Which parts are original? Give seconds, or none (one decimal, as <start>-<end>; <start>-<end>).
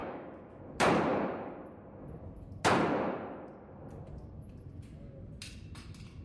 0.6-6.2